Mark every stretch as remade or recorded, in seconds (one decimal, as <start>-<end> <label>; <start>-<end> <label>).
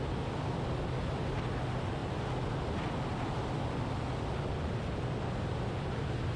0.0-6.4 recorded